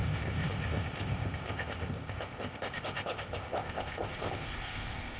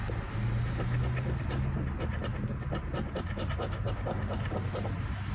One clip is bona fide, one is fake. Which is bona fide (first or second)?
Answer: second